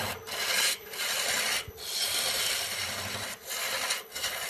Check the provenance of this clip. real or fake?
real